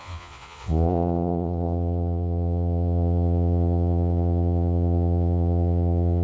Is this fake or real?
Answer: fake